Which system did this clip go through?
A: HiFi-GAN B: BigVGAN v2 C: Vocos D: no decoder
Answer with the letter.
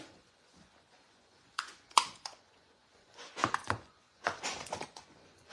C